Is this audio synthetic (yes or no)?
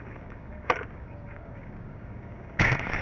yes